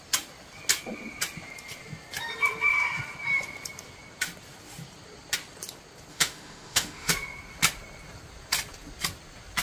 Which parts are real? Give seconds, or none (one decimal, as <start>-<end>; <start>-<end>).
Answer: 0.0-6.1; 7.1-9.6